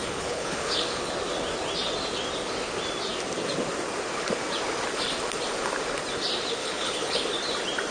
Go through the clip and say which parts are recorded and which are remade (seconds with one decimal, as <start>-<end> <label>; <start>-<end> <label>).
0.0-1.1 remade; 1.1-6.6 recorded; 6.6-7.2 remade; 7.2-7.9 recorded